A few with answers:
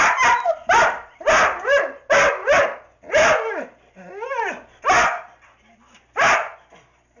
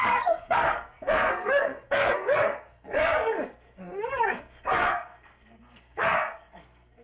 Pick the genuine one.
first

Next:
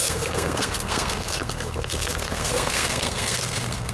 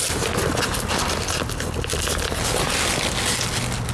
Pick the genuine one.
second